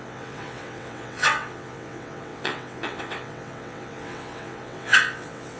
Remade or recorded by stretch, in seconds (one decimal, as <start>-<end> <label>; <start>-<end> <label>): 0.0-5.6 remade